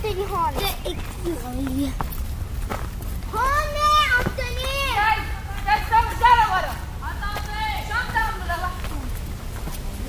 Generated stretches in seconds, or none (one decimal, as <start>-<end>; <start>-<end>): 8.2-8.8